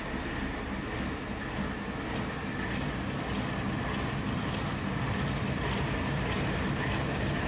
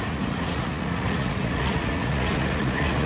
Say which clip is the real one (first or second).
first